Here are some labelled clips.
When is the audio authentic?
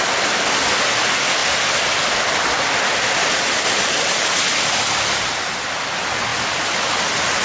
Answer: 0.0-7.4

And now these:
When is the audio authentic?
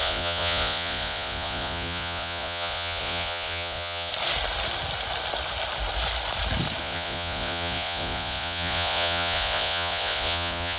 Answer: 4.1-6.8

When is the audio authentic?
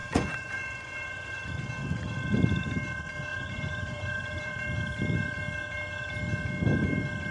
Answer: 1.5-3.3; 4.5-7.3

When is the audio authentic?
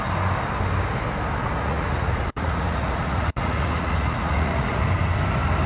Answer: 0.0-1.4; 4.8-5.7